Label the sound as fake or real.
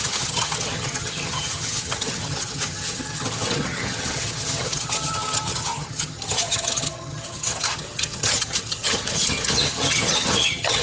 fake